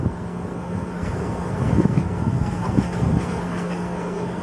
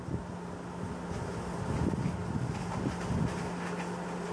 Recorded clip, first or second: second